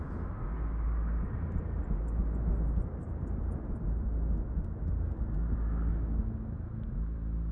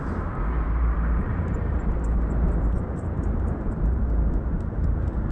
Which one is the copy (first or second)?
second